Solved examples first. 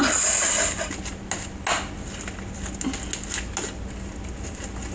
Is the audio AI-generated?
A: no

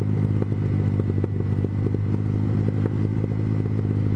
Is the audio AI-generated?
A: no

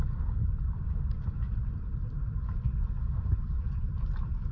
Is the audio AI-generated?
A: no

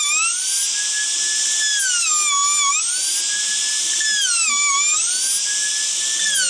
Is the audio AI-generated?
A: no